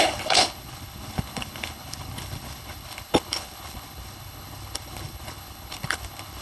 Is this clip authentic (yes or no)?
no